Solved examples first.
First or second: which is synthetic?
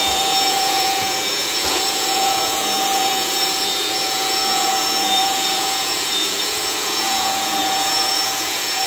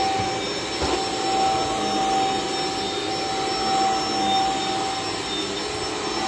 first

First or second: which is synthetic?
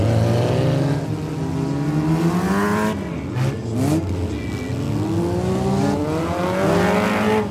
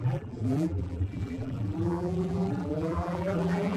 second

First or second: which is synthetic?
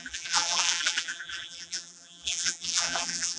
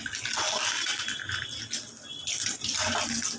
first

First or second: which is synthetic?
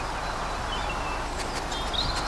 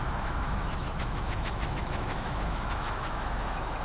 second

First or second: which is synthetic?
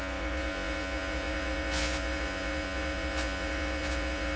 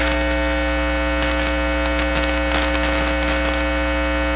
first